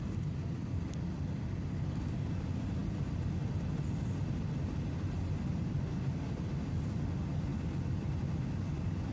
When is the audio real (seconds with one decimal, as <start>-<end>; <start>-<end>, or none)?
0.0-9.1